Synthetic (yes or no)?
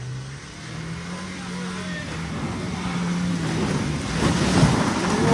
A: no